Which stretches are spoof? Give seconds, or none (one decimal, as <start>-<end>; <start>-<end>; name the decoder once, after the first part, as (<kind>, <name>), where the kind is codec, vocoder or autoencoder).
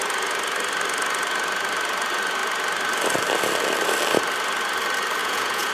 5.2-5.7 (vocoder, Vocos)